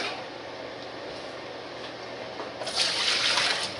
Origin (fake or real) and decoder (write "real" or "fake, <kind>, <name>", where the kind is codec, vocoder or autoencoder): real